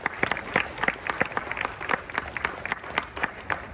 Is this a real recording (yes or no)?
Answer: yes